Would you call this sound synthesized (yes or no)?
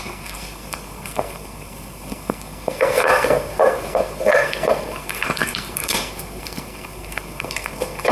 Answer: yes